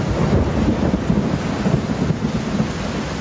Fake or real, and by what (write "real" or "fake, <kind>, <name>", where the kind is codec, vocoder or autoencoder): real